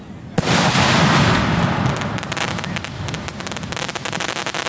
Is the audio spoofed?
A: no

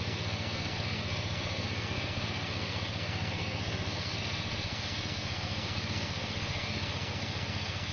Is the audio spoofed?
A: yes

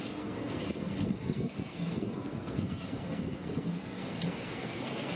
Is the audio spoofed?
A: yes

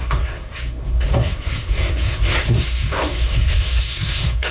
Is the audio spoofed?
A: yes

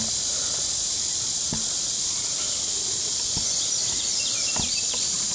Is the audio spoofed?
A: no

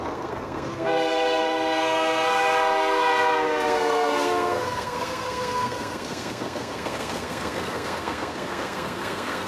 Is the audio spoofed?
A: yes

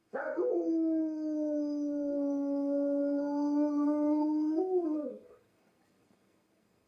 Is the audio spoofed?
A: yes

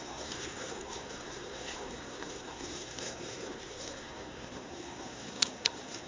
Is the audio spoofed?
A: yes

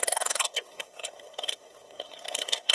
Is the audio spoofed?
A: yes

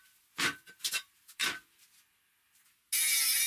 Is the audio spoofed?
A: no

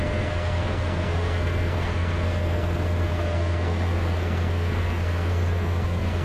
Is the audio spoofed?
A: yes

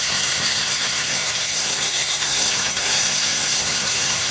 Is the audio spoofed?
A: yes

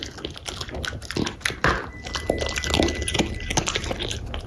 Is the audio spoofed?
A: no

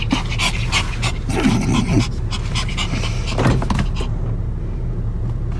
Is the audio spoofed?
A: no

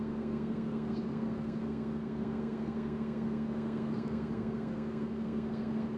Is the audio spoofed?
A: yes